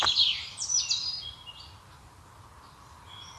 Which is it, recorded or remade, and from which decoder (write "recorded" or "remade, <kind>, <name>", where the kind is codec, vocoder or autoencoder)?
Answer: recorded